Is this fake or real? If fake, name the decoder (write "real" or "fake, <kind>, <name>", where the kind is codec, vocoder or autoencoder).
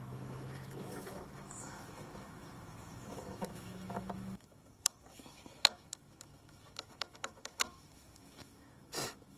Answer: fake, autoencoder, DAC-VAE